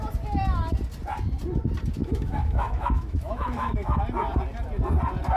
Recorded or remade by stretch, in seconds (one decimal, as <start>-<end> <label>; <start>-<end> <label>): 0.0-2.0 recorded; 2.0-4.0 remade; 4.0-5.4 recorded